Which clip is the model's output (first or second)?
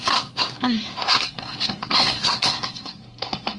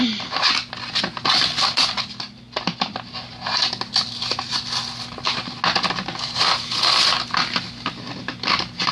first